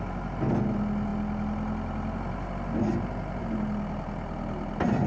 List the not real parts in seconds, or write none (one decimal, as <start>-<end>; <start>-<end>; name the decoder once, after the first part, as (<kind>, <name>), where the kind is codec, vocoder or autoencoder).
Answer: none